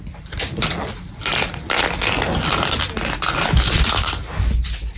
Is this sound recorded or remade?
recorded